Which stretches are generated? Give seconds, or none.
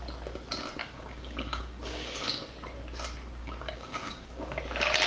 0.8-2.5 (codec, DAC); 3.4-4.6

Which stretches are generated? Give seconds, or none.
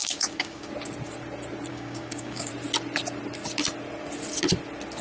0.0-0.7 (codec, DAC); 1.7-2.5